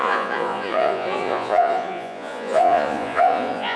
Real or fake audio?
fake